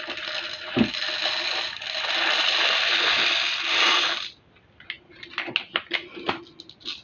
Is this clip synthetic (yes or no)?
no